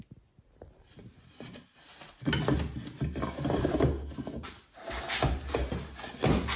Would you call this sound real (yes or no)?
yes